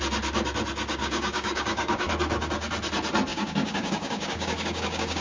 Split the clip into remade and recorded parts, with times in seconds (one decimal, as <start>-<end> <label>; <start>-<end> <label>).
0.0-1.0 recorded; 1.0-2.1 remade; 2.1-3.3 recorded; 3.3-5.2 remade